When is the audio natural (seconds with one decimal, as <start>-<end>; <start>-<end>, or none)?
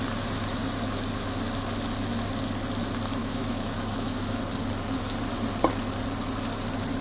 0.0-3.2; 4.4-7.0